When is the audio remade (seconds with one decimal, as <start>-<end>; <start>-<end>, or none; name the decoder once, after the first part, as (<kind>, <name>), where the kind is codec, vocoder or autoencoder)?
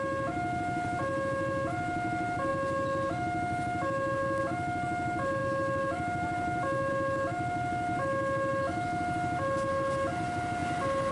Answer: none